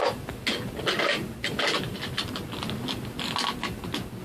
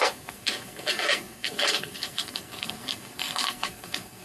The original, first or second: first